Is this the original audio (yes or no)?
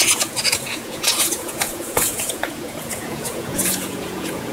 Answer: no